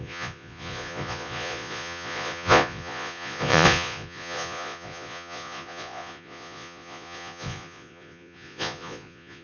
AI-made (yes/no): yes